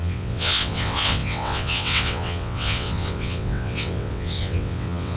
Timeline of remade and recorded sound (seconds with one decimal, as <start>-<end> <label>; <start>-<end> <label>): 0.0-5.2 remade